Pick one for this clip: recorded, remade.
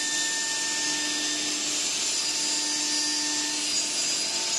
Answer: recorded